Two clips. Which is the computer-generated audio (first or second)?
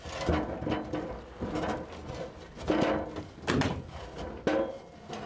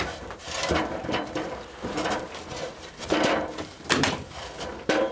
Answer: second